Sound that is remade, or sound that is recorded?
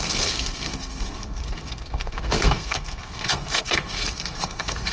remade